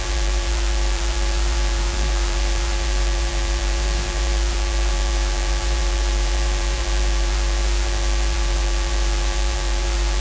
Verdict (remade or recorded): remade